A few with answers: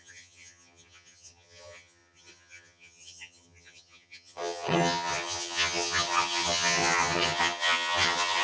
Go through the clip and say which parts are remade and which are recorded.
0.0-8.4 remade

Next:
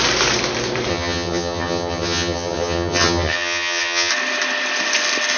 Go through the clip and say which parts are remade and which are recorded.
0.0-0.9 recorded; 0.9-4.1 remade; 4.1-5.4 recorded

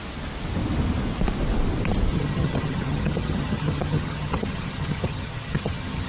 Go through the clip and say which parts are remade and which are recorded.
0.0-2.1 recorded; 2.1-6.1 remade

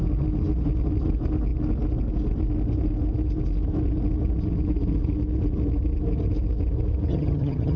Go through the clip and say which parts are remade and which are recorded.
0.0-7.1 recorded; 7.1-7.8 remade

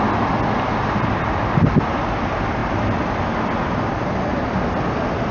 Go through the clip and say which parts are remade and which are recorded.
0.0-5.3 recorded

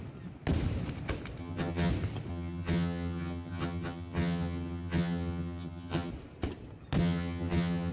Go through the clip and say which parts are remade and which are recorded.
0.0-1.4 recorded; 1.4-1.9 remade; 1.9-2.3 recorded; 2.3-6.1 remade; 6.1-7.0 recorded; 7.0-7.9 remade